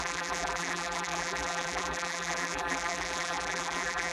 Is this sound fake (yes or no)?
yes